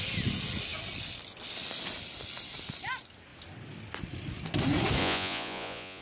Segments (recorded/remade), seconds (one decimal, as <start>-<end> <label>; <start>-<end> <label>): 0.0-5.0 recorded; 5.0-6.0 remade